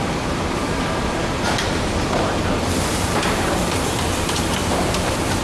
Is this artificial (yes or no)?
yes